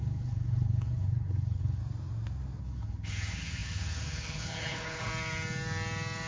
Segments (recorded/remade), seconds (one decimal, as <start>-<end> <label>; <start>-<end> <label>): 0.0-1.8 remade; 1.8-2.6 recorded; 2.6-5.1 remade; 5.1-6.3 recorded